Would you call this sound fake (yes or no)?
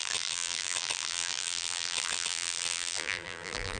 yes